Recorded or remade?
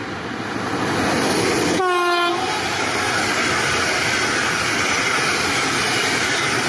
recorded